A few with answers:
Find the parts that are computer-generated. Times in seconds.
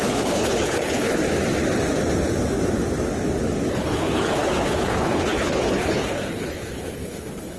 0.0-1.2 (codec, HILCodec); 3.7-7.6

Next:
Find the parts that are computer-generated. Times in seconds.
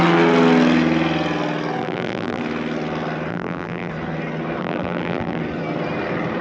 1.8-2.4 (vocoder, BigVGAN v2); 3.3-3.9; 4.6-5.4